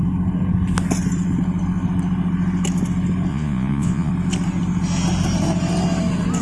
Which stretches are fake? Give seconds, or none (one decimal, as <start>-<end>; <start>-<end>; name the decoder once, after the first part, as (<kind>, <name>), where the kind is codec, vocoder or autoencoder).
3.3-4.1 (vocoder, Vocos)